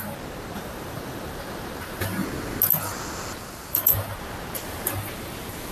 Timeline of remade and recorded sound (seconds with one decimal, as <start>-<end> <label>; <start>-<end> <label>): 0.0-2.2 remade; 2.2-3.5 recorded; 3.5-5.7 remade

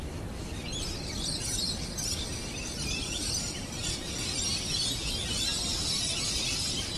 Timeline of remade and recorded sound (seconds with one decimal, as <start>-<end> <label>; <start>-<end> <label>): 0.0-1.2 recorded; 1.2-4.4 remade; 4.4-5.5 recorded; 5.5-6.1 remade; 6.1-7.0 recorded